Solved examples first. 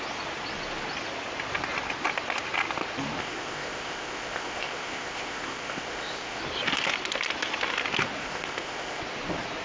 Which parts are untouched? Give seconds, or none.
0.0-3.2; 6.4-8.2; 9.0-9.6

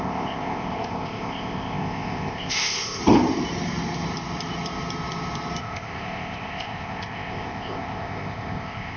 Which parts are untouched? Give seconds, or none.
3.0-5.6

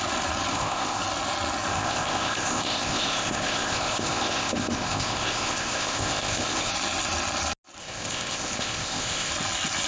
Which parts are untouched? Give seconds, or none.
0.0-0.5; 1.0-1.7; 6.7-7.8; 9.3-9.9

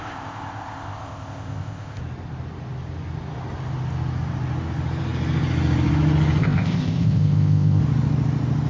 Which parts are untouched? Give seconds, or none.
2.0-6.4; 7.8-8.7

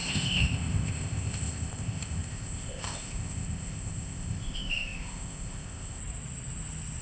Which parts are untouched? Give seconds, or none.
6.0-7.0

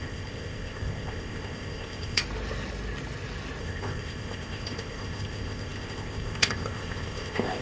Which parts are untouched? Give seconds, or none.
2.2-3.6

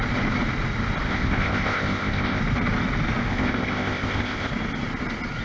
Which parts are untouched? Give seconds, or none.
0.0-1.1; 2.4-3.3; 4.5-5.4